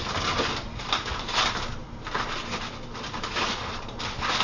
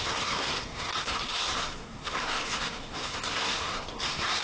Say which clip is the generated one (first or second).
second